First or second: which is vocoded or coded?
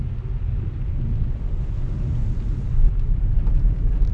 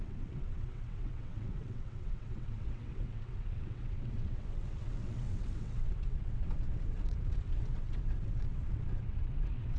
second